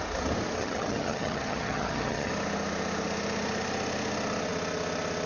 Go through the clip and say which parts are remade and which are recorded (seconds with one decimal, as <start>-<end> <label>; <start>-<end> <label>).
0.0-0.6 recorded; 0.6-2.3 remade; 2.3-5.3 recorded